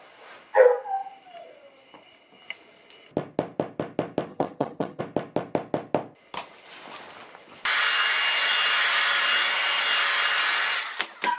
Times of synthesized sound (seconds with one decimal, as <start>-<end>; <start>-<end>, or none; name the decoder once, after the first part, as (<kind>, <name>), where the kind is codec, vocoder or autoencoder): 4.3-5.0 (vocoder, HiFi-GAN)